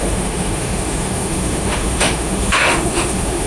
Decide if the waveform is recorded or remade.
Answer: remade